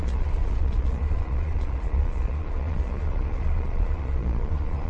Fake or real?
fake